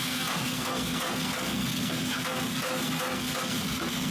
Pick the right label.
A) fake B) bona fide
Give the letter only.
A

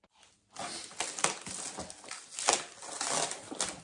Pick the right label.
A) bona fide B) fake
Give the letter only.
A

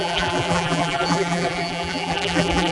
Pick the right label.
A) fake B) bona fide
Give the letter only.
A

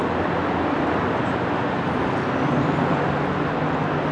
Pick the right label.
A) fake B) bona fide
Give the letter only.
B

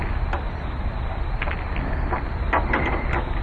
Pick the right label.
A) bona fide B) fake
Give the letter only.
A